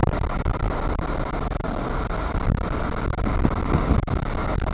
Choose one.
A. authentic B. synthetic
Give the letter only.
A